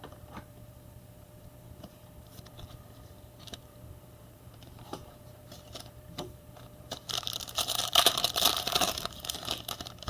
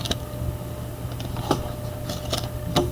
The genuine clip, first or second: second